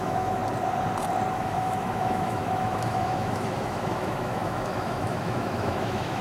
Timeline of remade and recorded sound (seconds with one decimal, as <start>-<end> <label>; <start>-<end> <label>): 0.0-0.4 remade; 0.4-1.3 recorded; 1.3-6.2 remade